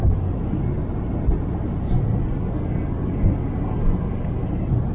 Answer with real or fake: real